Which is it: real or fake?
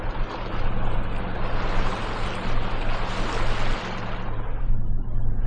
real